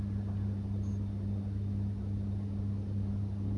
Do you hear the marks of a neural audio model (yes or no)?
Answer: no